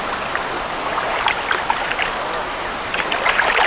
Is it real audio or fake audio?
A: real